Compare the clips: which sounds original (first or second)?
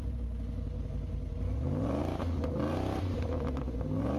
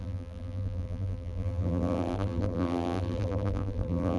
first